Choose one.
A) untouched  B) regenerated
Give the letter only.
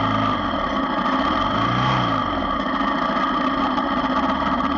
A